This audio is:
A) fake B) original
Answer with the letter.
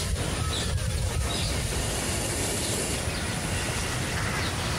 B